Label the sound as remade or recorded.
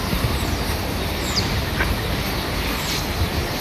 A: recorded